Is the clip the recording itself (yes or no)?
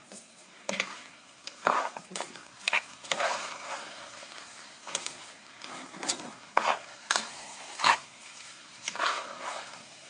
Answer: no